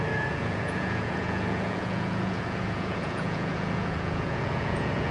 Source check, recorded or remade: remade